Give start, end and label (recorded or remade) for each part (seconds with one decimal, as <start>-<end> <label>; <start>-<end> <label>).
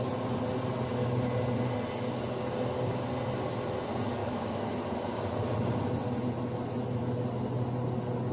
0.0-4.2 recorded; 4.2-4.7 remade; 4.7-8.3 recorded